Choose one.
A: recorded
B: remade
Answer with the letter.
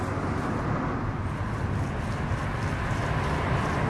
A